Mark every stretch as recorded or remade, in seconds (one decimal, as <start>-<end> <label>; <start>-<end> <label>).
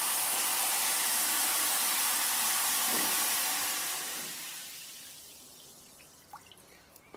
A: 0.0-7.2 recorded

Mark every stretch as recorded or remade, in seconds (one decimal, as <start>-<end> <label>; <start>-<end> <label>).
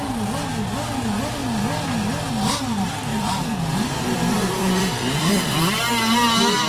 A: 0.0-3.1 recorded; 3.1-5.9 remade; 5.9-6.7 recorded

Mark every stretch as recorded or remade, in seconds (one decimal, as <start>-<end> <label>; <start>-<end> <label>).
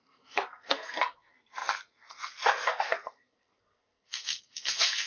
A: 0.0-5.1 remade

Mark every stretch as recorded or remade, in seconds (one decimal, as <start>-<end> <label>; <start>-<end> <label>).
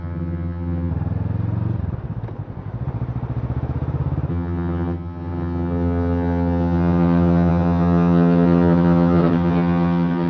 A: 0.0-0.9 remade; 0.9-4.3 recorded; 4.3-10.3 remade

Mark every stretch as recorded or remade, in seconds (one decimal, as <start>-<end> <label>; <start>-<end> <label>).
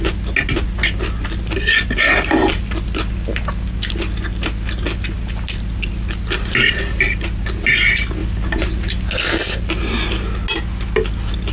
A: 0.0-11.5 recorded